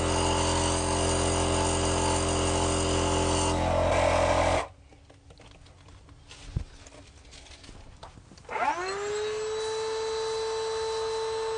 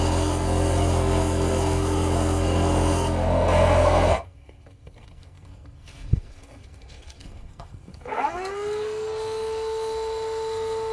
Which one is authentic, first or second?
first